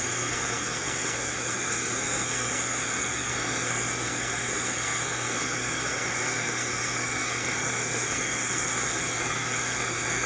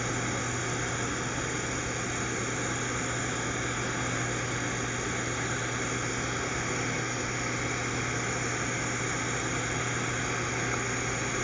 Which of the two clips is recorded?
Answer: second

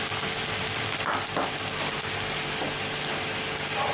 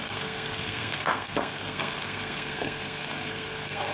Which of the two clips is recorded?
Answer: first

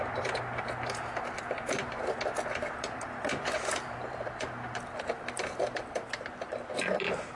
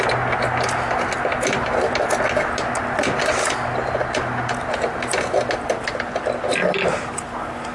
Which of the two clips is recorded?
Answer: second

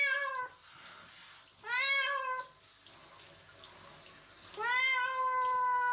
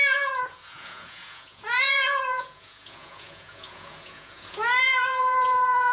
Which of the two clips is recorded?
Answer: first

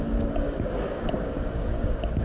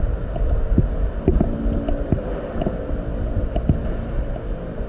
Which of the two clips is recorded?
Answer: second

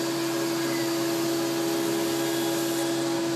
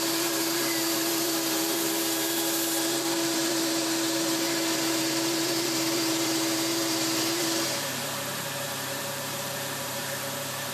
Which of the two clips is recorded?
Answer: first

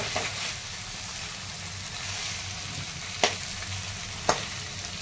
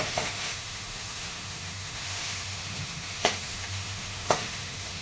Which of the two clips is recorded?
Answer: first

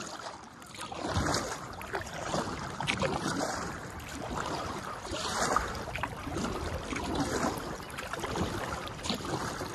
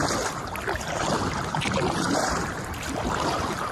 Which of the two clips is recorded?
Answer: second